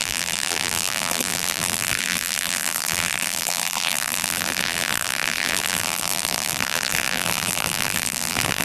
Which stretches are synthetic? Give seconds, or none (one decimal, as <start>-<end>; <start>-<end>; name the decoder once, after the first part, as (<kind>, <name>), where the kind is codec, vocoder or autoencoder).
0.0-8.6 (vocoder, BigVGAN v2)